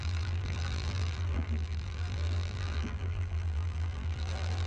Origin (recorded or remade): remade